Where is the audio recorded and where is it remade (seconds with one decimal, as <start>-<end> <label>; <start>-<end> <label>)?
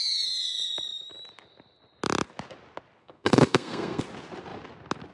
0.0-3.0 recorded; 3.0-4.0 remade; 4.0-5.1 recorded